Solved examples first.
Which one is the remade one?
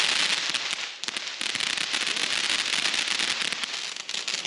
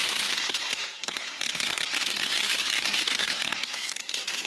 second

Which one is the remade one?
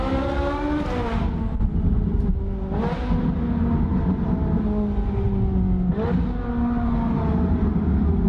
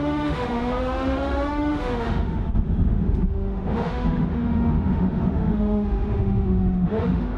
second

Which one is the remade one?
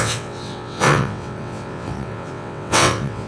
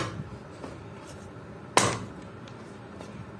first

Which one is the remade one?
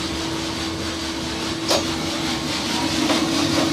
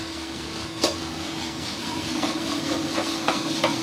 second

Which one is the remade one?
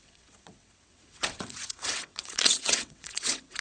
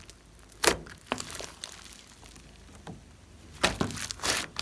first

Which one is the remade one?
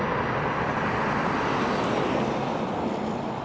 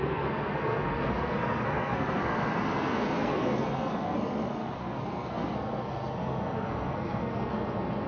second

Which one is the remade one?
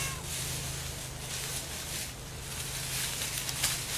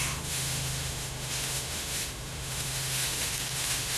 second